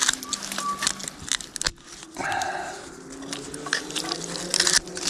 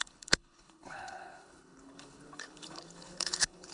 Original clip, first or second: first